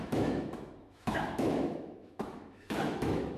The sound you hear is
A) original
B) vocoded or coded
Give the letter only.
B